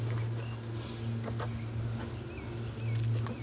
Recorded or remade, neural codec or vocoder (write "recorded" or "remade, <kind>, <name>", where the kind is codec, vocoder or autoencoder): recorded